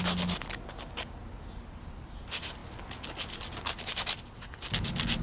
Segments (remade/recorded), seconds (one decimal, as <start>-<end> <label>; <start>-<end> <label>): 0.0-5.2 recorded

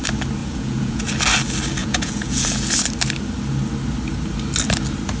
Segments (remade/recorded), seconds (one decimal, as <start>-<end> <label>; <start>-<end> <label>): 0.0-0.4 recorded; 0.4-1.1 remade; 1.1-1.8 recorded; 1.8-2.7 remade; 2.7-5.2 recorded

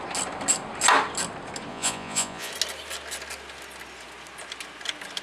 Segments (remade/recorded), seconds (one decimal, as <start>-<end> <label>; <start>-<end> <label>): 0.0-1.7 recorded; 1.7-2.5 remade; 2.5-5.2 recorded

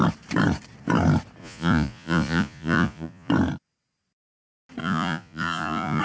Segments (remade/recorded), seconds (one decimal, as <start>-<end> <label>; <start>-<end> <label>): 0.0-1.4 recorded; 1.4-3.3 remade; 3.3-4.8 recorded; 4.8-6.0 remade

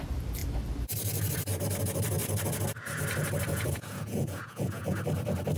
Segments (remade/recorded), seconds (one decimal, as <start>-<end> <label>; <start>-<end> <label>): 0.0-3.5 recorded; 3.5-5.0 remade; 5.0-5.6 recorded

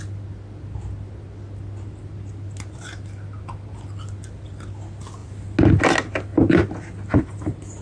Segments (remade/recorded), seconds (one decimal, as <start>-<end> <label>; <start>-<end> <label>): 0.0-7.8 recorded

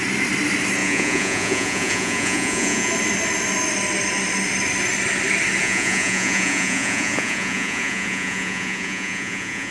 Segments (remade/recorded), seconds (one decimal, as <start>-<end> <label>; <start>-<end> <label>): 0.0-0.8 recorded; 0.8-2.9 remade; 2.9-5.6 recorded; 5.6-9.7 remade

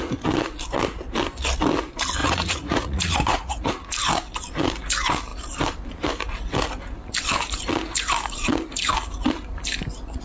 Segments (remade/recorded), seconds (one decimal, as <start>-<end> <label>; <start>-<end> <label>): 0.0-2.2 recorded; 2.2-3.7 remade; 3.7-10.2 recorded